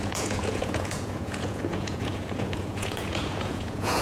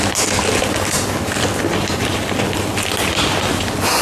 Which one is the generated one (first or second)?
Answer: first